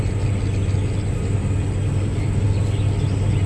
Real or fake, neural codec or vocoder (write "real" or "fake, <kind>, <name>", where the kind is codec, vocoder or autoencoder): real